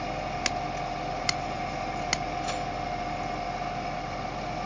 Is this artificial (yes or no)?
no